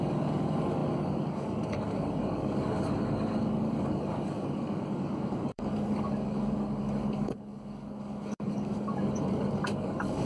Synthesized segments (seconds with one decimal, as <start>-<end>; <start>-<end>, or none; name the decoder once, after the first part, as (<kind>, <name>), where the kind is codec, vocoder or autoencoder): 0.0-10.3 (codec, DAC)